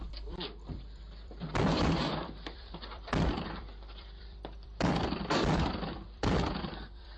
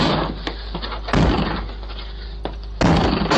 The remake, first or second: first